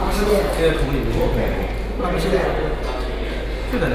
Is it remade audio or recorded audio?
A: recorded